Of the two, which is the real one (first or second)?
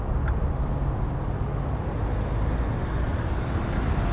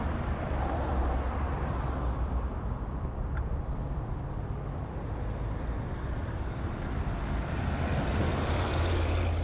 first